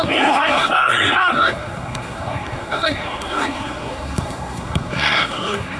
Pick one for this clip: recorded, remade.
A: remade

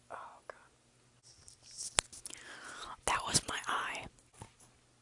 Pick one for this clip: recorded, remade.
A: recorded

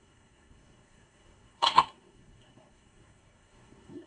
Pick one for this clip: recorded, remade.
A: remade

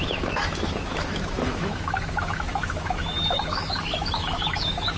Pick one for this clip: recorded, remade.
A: remade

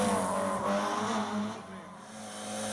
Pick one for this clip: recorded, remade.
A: recorded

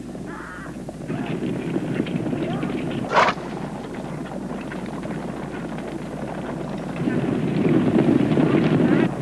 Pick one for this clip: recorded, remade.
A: recorded